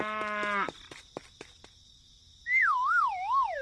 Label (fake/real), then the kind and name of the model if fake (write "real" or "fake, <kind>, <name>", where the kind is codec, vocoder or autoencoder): real